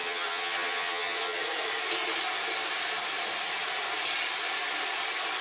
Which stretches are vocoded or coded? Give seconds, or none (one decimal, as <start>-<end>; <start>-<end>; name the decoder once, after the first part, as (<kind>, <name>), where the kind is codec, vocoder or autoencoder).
0.0-1.4 (vocoder, HiFi-GAN)